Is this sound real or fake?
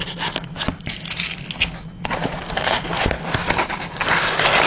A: real